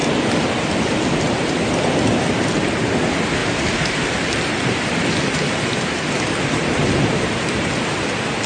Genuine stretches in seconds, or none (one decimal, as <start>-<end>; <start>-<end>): 0.0-3.4; 7.4-8.5